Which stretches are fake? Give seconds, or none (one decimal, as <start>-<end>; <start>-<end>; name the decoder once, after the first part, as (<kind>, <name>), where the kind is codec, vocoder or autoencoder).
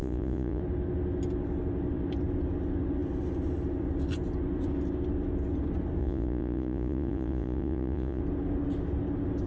0.0-0.6 (vocoder, Vocos); 6.0-8.2